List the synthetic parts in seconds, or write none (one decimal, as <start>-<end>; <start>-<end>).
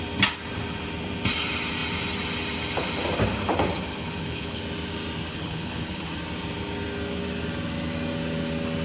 3.9-4.6; 5.3-6.1